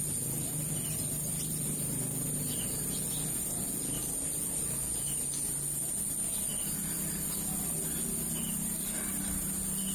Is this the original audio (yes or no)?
yes